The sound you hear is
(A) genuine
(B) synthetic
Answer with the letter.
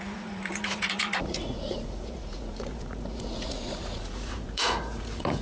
B